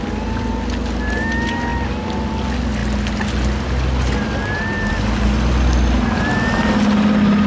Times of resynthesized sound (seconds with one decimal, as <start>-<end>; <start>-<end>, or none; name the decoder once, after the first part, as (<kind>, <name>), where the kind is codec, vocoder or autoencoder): none